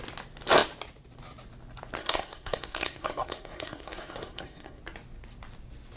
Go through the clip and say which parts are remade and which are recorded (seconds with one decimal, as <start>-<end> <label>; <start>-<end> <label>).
0.0-2.0 recorded; 2.0-4.8 remade; 4.8-6.0 recorded